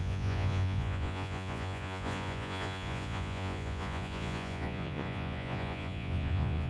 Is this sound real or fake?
fake